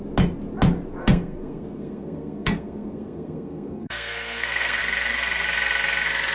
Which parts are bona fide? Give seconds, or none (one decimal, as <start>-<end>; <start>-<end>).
0.0-1.0; 4.8-6.3